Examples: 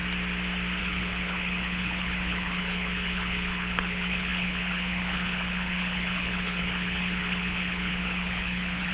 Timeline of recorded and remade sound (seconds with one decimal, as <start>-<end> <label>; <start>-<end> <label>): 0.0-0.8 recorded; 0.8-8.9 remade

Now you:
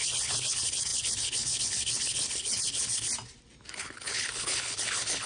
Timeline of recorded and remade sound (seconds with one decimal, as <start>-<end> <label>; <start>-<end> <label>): 0.0-3.1 remade; 3.1-3.7 recorded; 3.7-5.3 remade

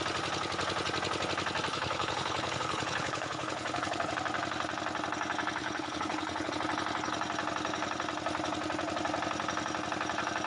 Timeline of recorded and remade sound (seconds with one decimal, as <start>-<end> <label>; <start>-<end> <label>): 0.0-1.7 recorded; 1.7-4.1 remade; 4.1-5.6 recorded; 5.6-6.5 remade; 6.5-10.5 recorded

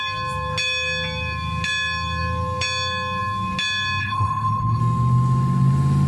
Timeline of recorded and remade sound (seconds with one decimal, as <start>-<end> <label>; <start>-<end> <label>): 0.0-4.0 recorded; 4.0-4.8 remade; 4.8-6.1 recorded

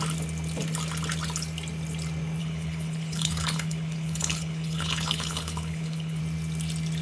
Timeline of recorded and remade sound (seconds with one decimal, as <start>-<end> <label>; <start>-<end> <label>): 0.0-2.4 recorded; 2.4-6.2 remade; 6.2-7.0 recorded